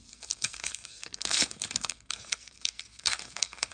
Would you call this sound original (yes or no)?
no